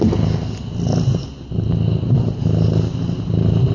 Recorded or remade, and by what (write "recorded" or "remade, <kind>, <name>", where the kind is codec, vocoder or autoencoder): recorded